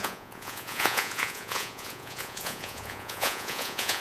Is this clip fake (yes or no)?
yes